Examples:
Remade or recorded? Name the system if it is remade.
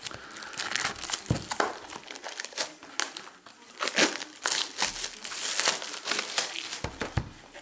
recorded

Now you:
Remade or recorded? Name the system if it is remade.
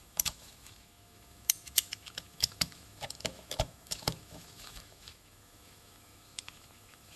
remade, autoencoder, DAC-VAE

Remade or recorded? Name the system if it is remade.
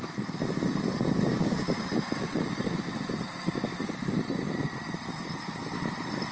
remade, vocoder, BigVGAN v2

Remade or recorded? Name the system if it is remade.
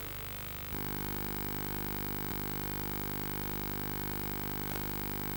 recorded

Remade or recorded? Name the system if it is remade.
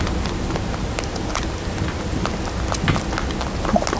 recorded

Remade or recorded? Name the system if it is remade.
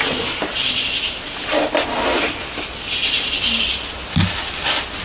recorded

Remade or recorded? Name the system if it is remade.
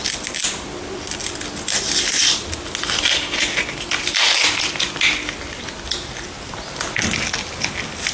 recorded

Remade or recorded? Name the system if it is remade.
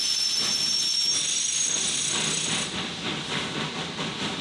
recorded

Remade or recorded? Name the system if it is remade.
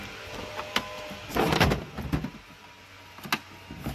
recorded